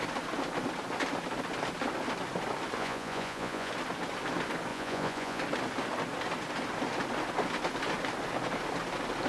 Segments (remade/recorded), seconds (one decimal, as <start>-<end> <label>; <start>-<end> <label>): 0.0-2.8 recorded; 2.8-3.7 remade; 3.7-4.7 recorded; 4.7-5.4 remade; 5.4-9.3 recorded